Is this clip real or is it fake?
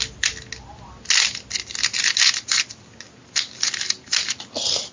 real